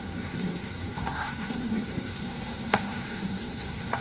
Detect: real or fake fake